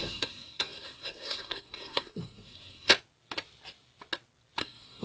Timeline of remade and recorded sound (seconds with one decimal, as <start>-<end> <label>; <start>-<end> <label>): 0.0-2.9 remade; 2.9-4.6 recorded; 4.6-5.0 remade